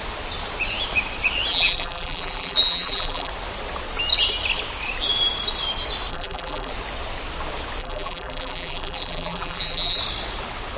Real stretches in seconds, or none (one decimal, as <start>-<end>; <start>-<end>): 0.0-1.5; 3.3-6.1; 6.7-7.8; 10.0-10.8